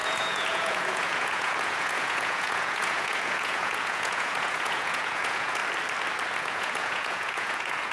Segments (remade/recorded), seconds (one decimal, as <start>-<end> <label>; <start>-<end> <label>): 0.0-5.6 remade; 5.6-6.4 recorded; 6.4-7.9 remade